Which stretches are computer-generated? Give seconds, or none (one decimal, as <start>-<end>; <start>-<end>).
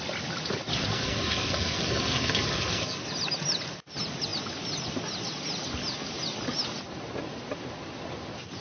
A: 0.9-3.0